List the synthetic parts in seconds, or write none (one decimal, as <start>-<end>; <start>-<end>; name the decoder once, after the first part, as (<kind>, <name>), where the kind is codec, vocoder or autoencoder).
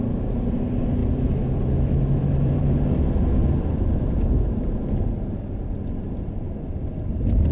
1.0-2.7 (vocoder, BigVGAN v2); 3.4-6.9